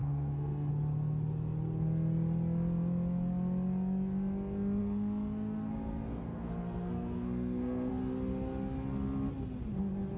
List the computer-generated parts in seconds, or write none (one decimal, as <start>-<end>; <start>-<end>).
0.0-0.7; 4.8-7.9